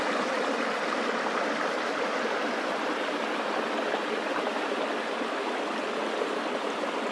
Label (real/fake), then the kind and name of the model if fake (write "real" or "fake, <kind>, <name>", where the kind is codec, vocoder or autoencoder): real